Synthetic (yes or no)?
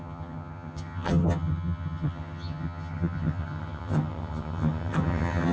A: yes